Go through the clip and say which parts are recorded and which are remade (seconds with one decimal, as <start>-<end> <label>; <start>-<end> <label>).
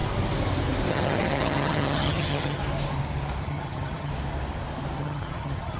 0.0-0.9 recorded; 0.9-2.6 remade; 2.6-3.4 recorded; 3.4-4.1 remade; 4.1-5.0 recorded; 5.0-5.8 remade